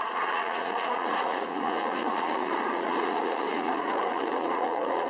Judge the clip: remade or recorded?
remade